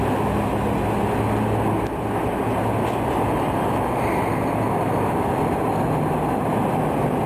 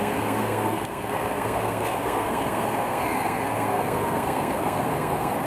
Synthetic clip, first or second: second